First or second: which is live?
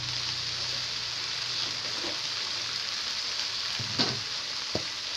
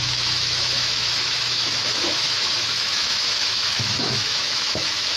first